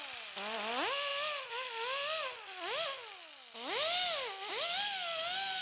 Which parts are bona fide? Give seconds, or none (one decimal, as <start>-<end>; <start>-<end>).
0.0-5.6

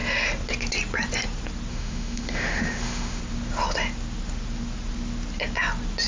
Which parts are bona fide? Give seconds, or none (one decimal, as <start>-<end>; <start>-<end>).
0.0-1.7; 3.2-6.1

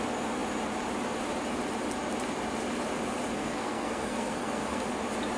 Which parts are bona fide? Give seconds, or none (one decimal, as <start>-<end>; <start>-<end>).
0.0-3.4; 4.8-5.4